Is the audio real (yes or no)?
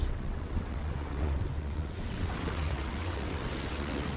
no